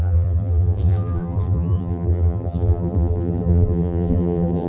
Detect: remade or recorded remade